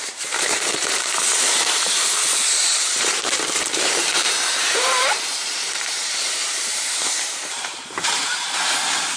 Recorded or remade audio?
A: remade